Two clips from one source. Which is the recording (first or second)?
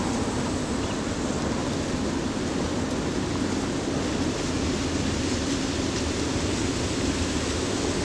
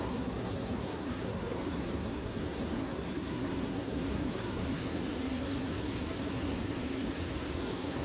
first